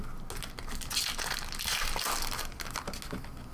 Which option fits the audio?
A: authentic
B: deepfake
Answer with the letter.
A